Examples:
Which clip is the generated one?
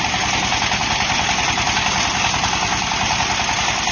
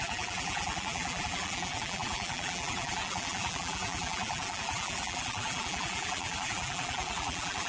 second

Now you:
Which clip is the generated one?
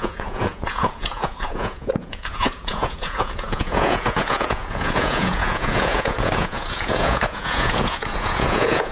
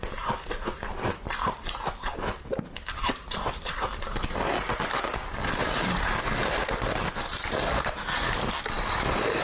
first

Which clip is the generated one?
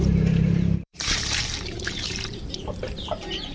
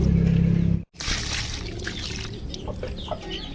first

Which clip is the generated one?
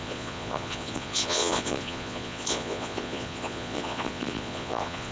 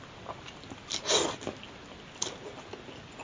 first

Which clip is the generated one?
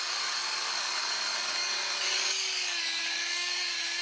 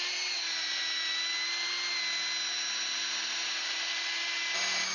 first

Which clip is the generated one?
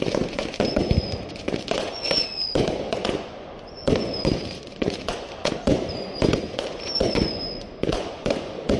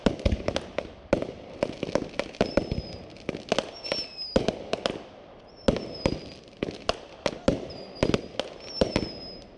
first